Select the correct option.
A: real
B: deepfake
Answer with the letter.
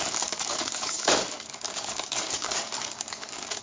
B